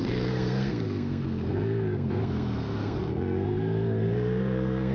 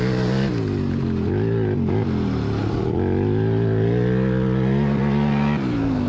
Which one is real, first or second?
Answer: second